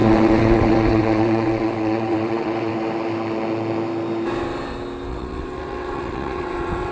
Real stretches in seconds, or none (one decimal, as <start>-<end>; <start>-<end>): 2.7-5.1